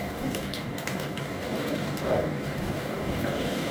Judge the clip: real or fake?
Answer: fake